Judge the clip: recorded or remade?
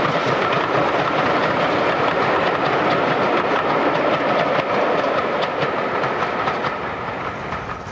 recorded